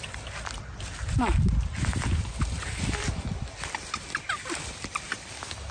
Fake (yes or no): no